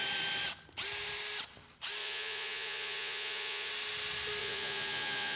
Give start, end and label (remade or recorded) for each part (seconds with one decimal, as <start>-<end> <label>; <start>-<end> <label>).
0.0-2.0 recorded; 2.0-3.7 remade; 3.7-4.4 recorded; 4.4-5.4 remade